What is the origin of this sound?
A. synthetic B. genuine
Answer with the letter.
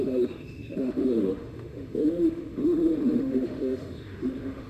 A